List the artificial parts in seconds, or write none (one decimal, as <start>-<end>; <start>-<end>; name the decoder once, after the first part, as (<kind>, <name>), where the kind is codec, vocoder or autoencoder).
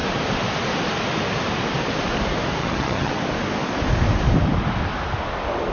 2.6-3.1 (vocoder, HiFi-GAN)